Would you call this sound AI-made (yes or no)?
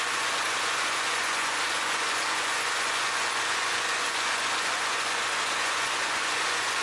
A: yes